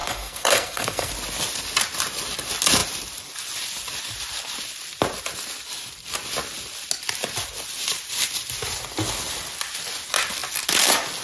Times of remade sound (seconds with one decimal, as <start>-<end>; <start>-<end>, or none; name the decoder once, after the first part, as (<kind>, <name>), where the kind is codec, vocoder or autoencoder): 0.0-1.1 (codec, SNAC)